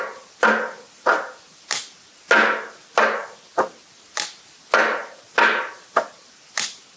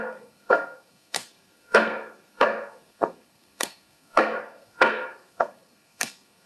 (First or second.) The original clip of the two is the first